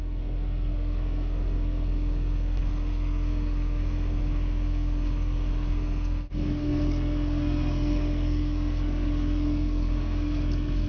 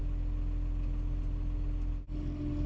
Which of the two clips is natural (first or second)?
second